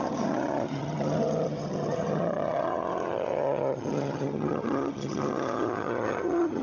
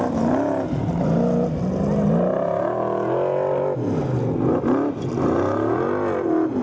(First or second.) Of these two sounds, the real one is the second